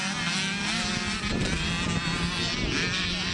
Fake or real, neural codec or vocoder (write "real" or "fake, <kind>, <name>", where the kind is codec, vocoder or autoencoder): real